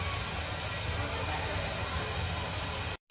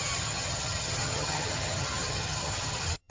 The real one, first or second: first